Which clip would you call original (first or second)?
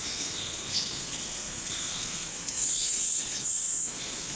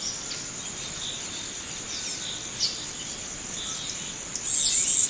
second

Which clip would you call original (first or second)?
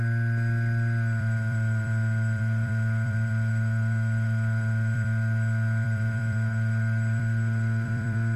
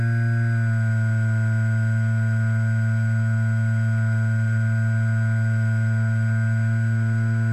second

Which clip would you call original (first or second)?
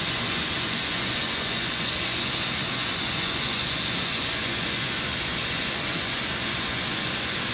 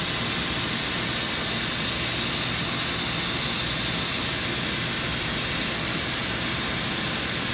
second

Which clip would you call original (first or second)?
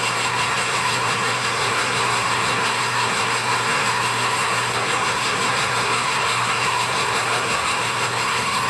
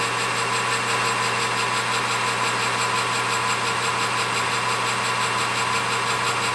second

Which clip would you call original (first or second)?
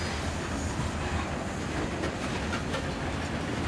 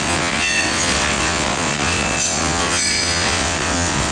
first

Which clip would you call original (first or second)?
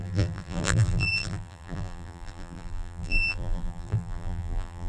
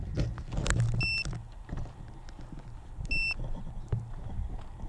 second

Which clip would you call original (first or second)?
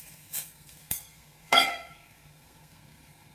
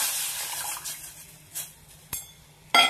second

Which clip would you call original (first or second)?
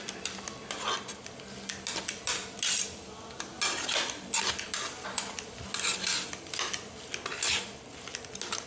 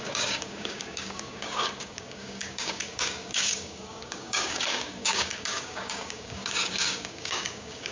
first